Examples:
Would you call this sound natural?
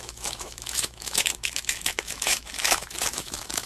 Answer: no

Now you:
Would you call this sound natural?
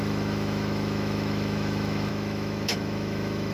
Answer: no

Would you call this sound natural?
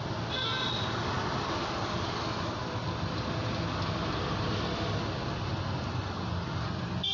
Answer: yes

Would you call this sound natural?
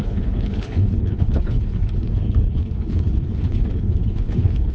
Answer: no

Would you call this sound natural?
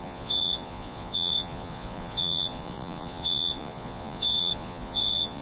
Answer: no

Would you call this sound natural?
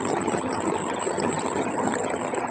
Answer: no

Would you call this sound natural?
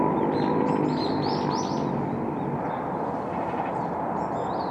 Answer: yes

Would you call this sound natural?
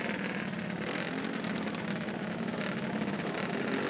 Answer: yes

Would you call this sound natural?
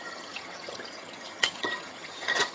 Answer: no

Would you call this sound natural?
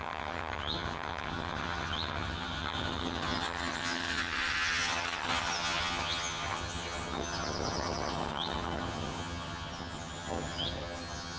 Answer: no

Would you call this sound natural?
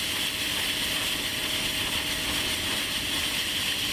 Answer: yes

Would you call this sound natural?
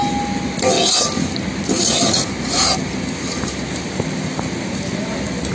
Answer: yes